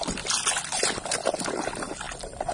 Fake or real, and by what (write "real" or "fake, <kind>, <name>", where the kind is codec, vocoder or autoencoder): real